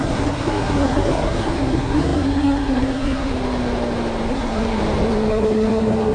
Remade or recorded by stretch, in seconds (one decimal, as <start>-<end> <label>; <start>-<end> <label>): 0.0-3.3 remade; 3.3-4.3 recorded; 4.3-4.8 remade; 4.8-5.3 recorded; 5.3-6.1 remade